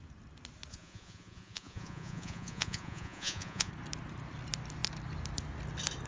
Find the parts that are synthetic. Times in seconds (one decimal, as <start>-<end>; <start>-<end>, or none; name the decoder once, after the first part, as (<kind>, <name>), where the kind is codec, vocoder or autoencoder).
0.7-3.7 (vocoder, Vocos)